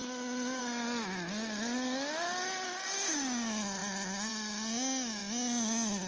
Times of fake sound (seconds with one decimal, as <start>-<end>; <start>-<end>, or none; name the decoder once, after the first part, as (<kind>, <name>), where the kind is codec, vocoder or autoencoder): none